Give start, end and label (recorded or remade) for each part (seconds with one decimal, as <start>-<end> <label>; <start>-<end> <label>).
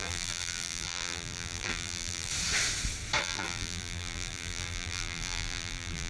0.0-2.3 remade; 2.3-3.2 recorded; 3.2-6.1 remade